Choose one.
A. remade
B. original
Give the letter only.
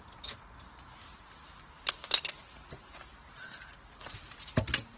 A